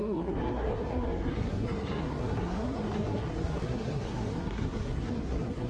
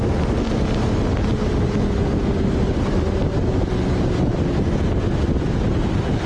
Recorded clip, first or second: second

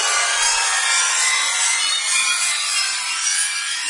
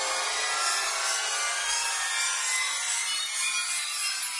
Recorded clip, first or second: second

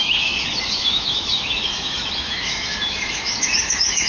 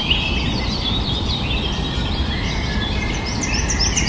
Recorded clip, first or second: second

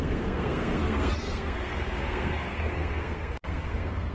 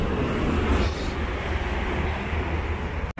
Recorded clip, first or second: second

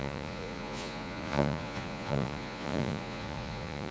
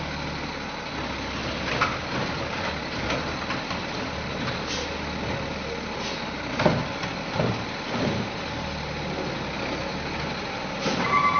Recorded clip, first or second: second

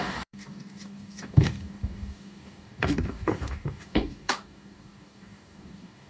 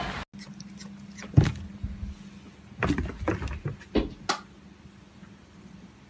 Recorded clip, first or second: second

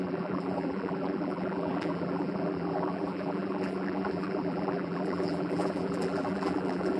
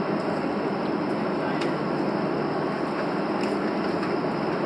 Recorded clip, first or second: second